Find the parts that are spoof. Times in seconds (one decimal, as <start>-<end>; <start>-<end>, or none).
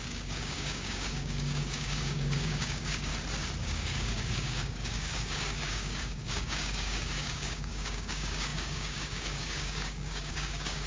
0.0-3.1; 3.6-10.9